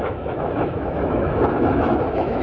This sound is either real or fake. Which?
fake